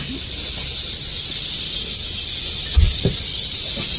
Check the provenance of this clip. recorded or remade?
recorded